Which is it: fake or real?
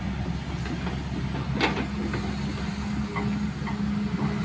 real